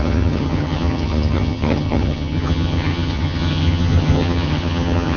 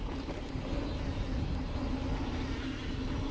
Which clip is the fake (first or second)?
first